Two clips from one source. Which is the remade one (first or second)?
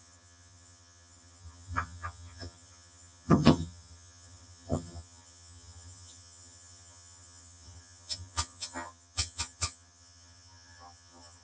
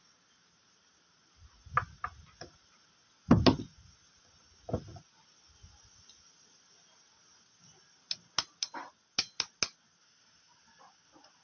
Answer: first